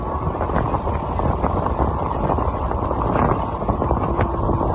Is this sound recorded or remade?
recorded